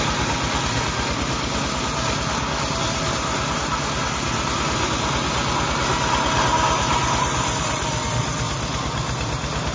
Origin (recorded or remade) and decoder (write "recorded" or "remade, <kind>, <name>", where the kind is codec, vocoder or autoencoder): recorded